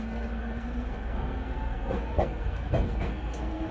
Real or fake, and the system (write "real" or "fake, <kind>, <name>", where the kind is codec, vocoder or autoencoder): fake, codec, SNAC